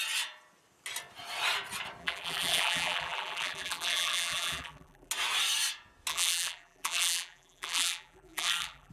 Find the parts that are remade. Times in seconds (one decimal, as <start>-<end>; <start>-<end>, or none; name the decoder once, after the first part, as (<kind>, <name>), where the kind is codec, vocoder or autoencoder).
2.0-5.1 (vocoder, BigVGAN v2); 6.1-8.9